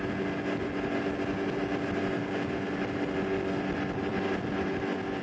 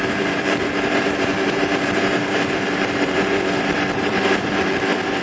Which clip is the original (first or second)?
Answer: first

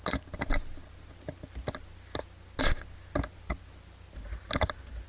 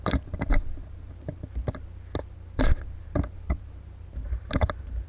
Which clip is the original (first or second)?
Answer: first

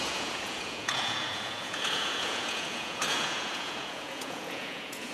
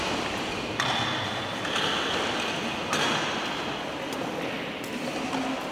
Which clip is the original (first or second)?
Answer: second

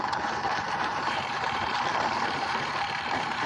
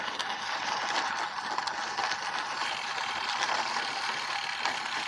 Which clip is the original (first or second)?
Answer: second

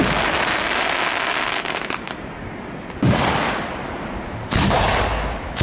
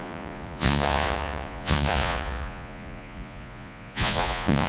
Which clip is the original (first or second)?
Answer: first